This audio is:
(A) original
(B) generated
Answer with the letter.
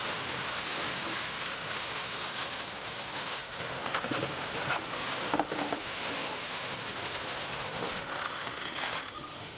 B